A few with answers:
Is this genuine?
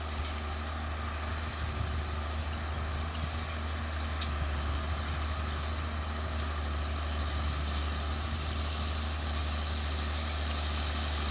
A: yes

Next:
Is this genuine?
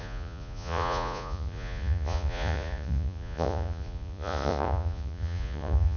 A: no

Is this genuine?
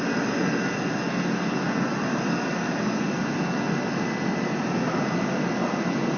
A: yes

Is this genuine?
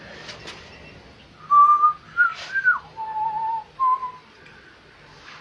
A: yes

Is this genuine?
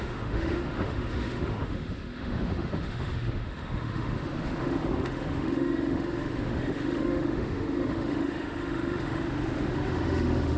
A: no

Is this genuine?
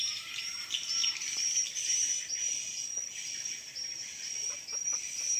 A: yes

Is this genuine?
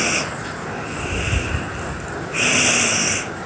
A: yes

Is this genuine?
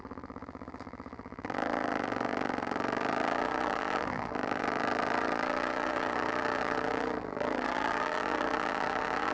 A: no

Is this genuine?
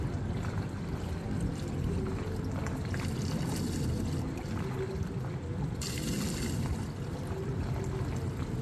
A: yes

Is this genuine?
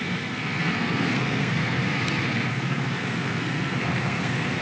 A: no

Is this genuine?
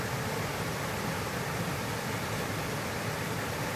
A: yes